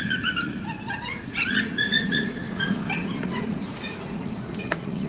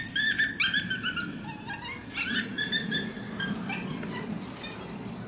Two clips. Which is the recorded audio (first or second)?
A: second